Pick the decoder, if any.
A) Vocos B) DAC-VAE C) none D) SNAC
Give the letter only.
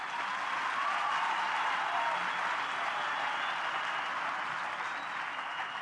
C